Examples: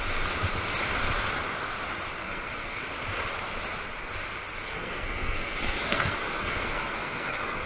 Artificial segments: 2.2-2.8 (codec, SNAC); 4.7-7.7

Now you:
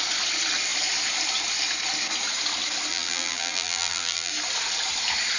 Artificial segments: 2.9-4.3 (vocoder, BigVGAN v2)